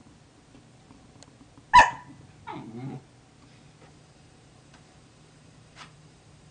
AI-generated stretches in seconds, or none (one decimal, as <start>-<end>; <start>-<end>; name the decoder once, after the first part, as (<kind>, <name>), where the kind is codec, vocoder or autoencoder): 3.9-6.5 (vocoder, BigVGAN v2)